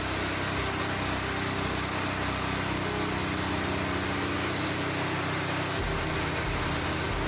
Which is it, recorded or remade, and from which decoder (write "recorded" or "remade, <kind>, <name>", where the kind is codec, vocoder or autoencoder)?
recorded